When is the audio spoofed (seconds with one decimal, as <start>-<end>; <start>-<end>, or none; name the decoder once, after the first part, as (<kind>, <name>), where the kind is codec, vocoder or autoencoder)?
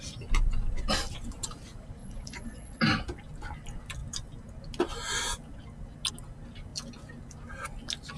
2.0-2.8 (vocoder, Vocos)